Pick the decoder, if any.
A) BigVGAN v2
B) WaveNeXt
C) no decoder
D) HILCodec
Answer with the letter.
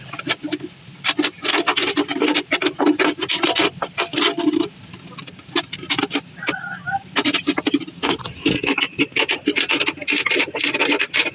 C